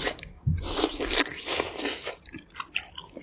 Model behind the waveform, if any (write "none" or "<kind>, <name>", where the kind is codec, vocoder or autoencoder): none